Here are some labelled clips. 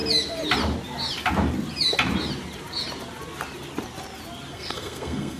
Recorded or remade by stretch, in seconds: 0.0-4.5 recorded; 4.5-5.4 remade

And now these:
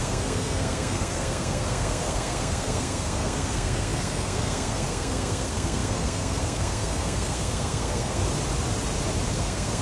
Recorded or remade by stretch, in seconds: 0.0-8.2 remade; 8.2-9.3 recorded; 9.3-9.8 remade